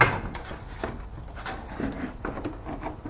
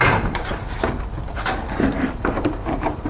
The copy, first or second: second